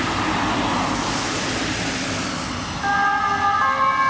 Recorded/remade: recorded